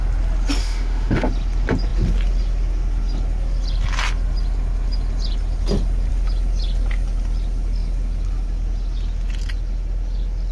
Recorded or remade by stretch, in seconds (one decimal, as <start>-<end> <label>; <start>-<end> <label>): 0.0-0.6 recorded; 0.6-1.3 remade; 1.3-10.5 recorded